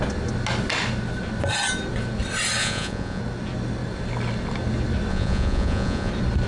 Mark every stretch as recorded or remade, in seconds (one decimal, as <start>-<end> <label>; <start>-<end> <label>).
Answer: 0.0-2.6 recorded; 2.6-3.2 remade; 3.2-5.1 recorded; 5.1-6.1 remade; 6.1-6.5 recorded